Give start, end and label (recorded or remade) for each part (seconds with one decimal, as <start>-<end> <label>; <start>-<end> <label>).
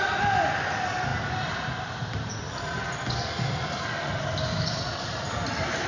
0.0-5.9 recorded